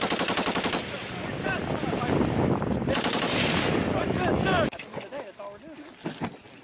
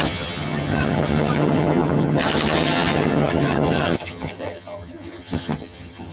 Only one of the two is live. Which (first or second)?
first